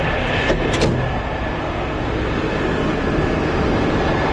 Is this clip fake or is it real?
real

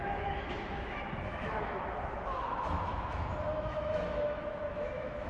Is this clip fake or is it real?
fake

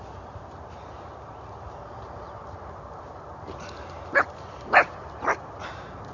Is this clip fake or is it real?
real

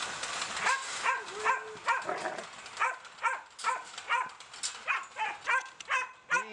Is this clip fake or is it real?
real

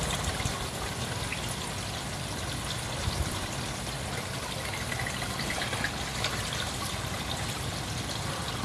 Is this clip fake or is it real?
real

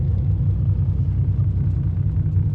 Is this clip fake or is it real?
real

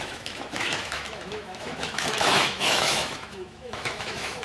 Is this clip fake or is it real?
fake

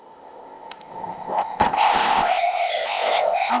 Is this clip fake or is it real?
fake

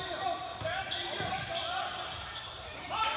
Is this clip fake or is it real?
fake